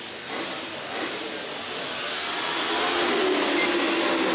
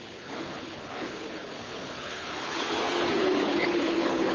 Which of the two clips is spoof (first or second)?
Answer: second